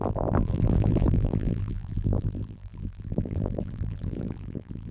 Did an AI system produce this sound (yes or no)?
yes